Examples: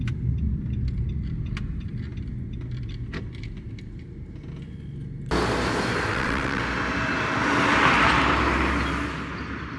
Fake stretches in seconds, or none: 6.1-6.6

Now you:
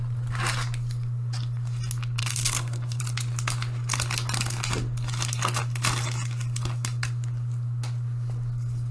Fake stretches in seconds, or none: 2.2-3.0

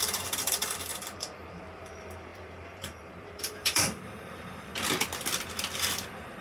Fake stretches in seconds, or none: 0.0-4.7

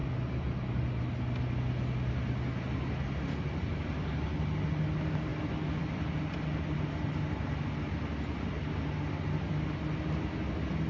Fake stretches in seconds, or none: none

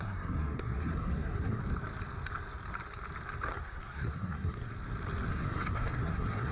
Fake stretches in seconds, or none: 0.0-1.6; 3.5-4.7; 5.3-6.5

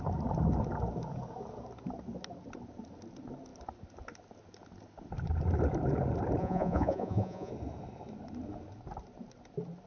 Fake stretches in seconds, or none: 6.4-7.5

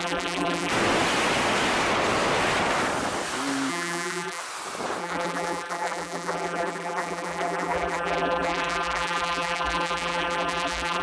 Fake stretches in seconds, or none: 0.0-0.7; 3.7-4.4; 5.0-11.0